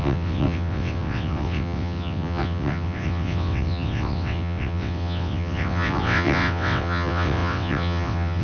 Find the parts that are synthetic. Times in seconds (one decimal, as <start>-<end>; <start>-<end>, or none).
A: 0.0-8.4